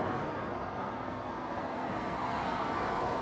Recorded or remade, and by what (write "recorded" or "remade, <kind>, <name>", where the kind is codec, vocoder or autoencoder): remade, codec, SNAC